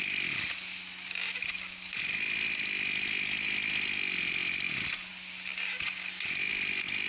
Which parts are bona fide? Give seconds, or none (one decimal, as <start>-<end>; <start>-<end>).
0.0-7.1